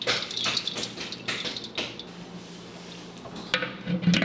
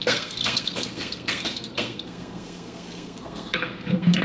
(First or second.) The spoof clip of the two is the second